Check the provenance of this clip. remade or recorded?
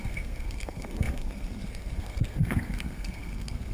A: remade